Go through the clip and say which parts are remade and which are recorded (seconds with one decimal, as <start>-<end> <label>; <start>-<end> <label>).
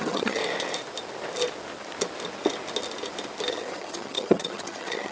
0.0-0.4 remade; 0.4-3.5 recorded; 3.5-5.1 remade